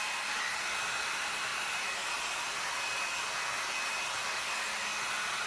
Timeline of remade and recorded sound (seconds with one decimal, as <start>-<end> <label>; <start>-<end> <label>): 0.0-5.5 recorded